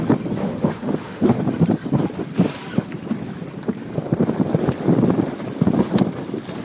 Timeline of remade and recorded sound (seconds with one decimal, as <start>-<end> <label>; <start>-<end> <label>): 0.0-0.4 recorded; 0.4-1.4 remade; 1.4-6.6 recorded